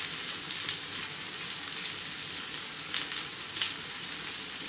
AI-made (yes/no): no